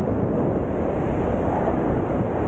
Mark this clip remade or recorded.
recorded